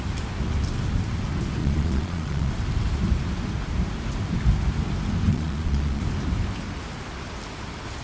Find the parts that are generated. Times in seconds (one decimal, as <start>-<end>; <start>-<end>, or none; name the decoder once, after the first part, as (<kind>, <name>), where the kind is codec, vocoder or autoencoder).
1.6-2.5 (vocoder, Vocos); 5.3-6.0